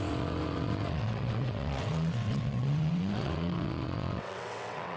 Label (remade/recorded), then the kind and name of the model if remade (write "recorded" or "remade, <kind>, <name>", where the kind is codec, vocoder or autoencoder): remade, vocoder, WaveNeXt